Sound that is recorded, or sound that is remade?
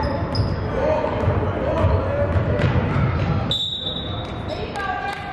recorded